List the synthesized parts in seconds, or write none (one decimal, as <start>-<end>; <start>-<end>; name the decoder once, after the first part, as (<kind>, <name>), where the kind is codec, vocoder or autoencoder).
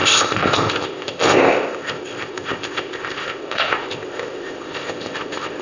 0.0-5.6 (codec, ZipCodec)